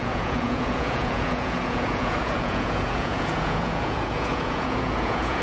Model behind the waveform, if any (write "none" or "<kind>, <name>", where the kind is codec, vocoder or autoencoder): vocoder, Vocos